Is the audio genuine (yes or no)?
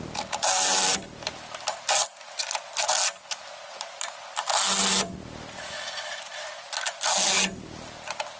yes